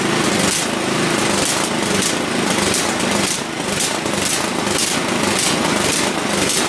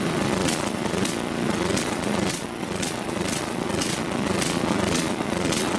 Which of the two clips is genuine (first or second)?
first